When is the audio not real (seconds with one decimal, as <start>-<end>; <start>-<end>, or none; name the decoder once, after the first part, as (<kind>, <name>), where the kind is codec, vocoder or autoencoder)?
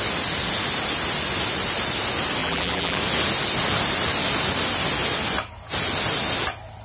2.4-3.0 (vocoder, BigVGAN v2)